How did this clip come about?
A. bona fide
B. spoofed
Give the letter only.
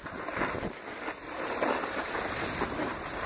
A